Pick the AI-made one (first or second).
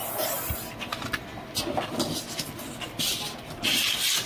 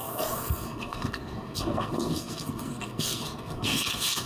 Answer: second